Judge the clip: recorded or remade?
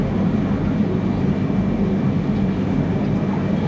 recorded